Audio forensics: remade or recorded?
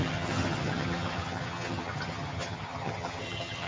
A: remade